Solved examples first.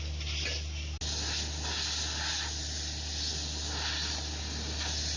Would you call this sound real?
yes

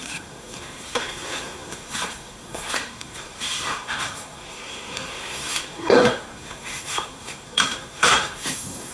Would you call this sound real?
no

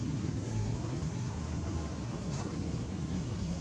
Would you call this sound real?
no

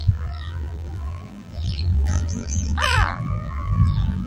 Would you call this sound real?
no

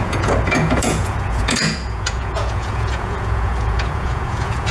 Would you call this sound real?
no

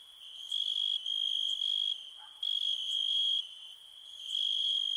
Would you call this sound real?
yes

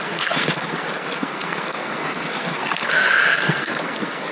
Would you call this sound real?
no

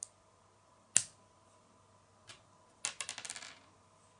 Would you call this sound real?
yes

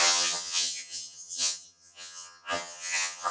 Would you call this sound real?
no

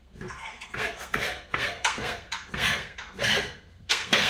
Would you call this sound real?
no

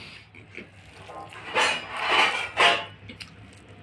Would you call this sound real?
yes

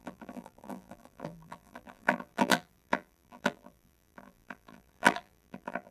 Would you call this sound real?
no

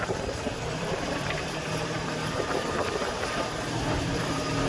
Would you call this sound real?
no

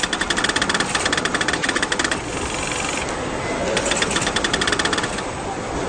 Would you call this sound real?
yes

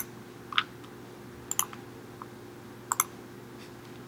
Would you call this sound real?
yes